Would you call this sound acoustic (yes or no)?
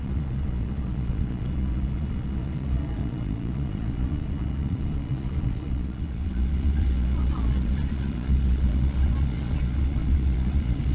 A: no